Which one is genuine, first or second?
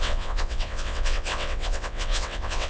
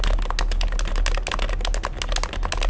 second